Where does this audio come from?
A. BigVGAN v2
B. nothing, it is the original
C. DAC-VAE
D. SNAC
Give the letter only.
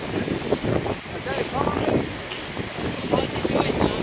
B